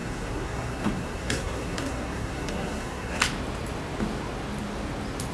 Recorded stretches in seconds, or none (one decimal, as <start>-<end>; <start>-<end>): 3.2-5.3